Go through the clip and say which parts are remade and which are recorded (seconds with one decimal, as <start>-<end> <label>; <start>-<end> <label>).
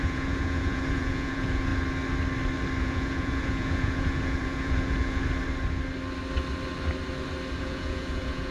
0.0-1.7 remade; 1.7-2.8 recorded; 2.8-5.2 remade; 5.2-7.6 recorded; 7.6-8.5 remade